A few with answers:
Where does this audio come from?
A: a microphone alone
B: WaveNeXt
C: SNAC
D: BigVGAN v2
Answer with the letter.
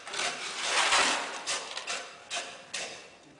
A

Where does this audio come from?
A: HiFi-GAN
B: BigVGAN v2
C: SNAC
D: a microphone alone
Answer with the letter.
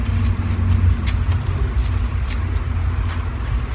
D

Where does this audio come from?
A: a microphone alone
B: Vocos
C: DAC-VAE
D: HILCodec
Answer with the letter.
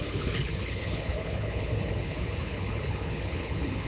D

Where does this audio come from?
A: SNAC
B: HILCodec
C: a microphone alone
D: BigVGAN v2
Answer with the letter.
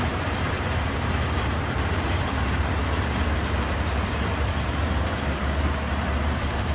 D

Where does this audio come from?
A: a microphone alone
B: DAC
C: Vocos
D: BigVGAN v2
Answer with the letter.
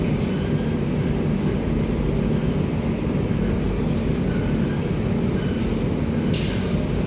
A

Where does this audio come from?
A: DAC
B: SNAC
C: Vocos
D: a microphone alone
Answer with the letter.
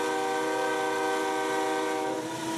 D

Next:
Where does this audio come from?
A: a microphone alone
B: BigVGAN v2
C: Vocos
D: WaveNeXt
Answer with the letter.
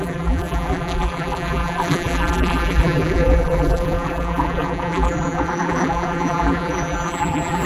B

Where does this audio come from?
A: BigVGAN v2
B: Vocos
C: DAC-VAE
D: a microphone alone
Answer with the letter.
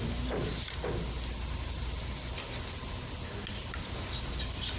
D